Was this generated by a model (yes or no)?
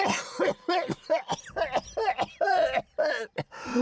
no